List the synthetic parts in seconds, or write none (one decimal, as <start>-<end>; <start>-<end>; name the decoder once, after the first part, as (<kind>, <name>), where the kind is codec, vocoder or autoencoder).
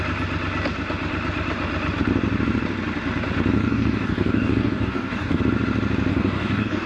3.6-5.4 (codec, DAC); 6.1-6.9